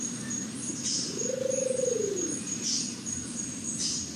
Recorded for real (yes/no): yes